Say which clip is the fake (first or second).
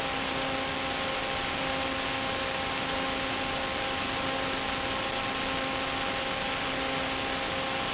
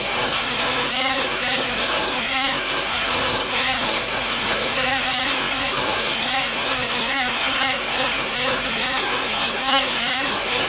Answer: second